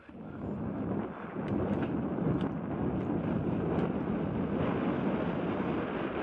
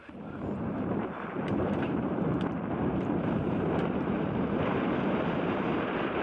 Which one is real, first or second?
first